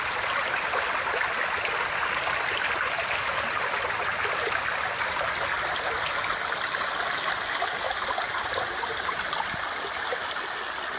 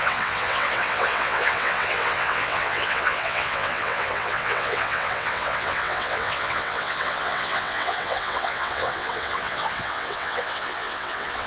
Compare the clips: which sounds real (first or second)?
first